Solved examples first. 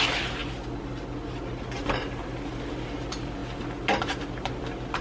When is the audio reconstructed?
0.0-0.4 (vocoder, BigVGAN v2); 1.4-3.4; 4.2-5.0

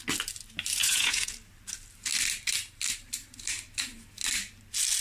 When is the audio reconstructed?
0.8-1.3 (vocoder, Vocos)

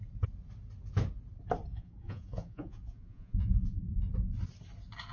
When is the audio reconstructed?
1.7-4.0 (vocoder, Vocos)

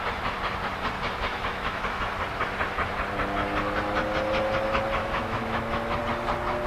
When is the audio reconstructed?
1.3-2.0 (autoencoder, DAC-VAE); 5.0-6.0